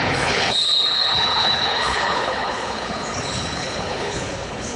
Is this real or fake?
fake